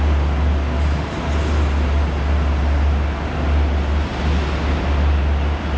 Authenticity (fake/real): real